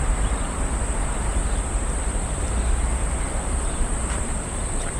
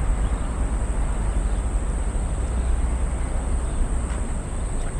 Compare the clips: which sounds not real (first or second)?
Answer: first